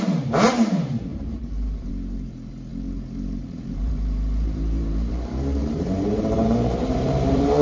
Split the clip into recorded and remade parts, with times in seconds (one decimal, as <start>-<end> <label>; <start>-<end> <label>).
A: 0.0-7.6 remade